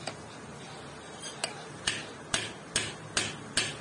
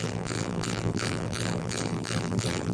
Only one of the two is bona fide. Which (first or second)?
first